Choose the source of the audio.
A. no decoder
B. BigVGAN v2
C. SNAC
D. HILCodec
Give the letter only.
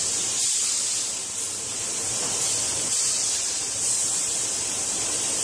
B